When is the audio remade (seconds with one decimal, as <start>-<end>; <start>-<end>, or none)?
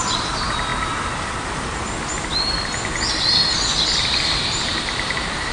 4.7-5.5